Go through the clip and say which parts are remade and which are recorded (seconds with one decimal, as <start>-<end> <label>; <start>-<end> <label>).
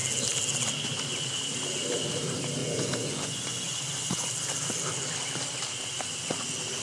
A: 0.0-2.6 recorded; 2.6-4.3 remade; 4.3-6.8 recorded